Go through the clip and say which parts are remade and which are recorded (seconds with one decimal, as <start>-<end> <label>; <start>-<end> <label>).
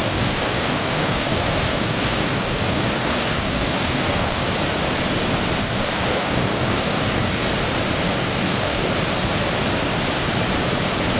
0.0-4.4 remade; 4.4-5.6 recorded; 5.6-7.5 remade; 7.5-8.1 recorded; 8.1-8.9 remade; 8.9-11.2 recorded